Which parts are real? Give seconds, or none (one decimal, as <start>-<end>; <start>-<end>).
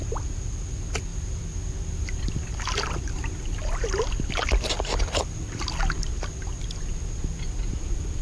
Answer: 0.0-8.2